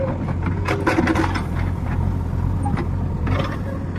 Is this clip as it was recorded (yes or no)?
yes